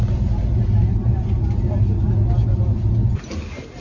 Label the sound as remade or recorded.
recorded